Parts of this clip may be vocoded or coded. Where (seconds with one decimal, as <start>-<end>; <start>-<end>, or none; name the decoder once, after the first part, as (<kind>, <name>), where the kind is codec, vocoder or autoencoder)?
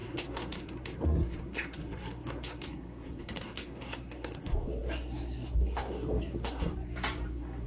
0.0-6.7 (codec, SNAC); 7.3-7.7